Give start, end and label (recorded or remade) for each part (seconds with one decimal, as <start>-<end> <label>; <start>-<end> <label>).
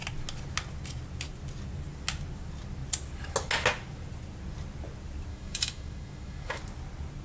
0.0-5.3 recorded; 5.3-6.6 remade; 6.6-7.2 recorded